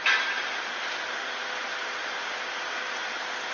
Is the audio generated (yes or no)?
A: no